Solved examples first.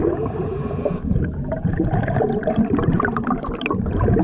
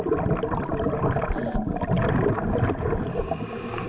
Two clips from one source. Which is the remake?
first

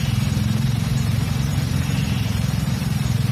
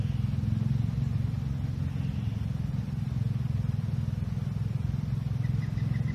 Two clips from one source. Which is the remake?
first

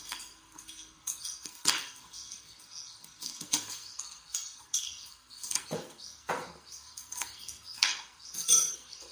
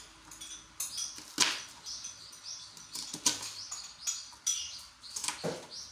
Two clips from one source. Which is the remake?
first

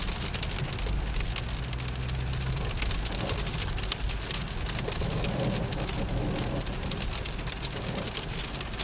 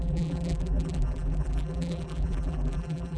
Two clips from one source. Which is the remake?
second